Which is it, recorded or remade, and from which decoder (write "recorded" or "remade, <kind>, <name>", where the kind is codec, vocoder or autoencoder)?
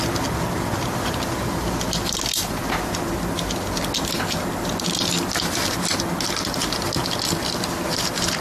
recorded